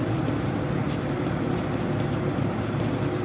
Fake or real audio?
real